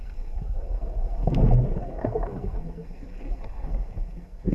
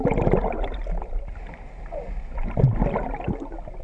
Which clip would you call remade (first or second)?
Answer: first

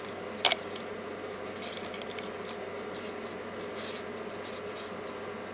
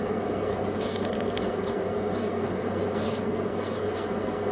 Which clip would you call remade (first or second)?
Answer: second